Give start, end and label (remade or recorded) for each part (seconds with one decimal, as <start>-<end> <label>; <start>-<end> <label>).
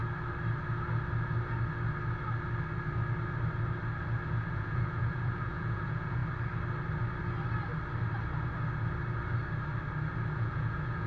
0.0-4.5 recorded; 4.5-6.2 remade; 6.2-10.3 recorded; 10.3-11.1 remade